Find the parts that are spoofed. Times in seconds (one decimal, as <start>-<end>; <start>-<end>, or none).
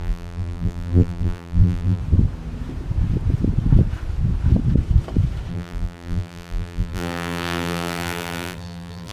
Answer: 0.0-2.0; 5.5-9.1